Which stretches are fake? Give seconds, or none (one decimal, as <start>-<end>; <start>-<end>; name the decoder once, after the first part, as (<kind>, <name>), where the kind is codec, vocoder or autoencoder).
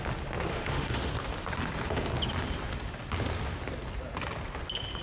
0.5-1.1 (autoencoder, DAC-VAE)